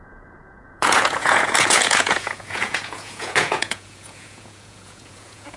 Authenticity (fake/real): fake